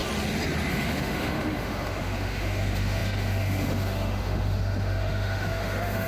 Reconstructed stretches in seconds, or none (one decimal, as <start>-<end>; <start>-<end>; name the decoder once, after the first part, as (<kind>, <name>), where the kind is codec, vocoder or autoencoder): 0.7-6.1 (autoencoder, DAC-VAE)